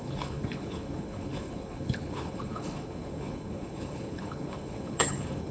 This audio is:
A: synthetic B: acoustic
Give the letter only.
A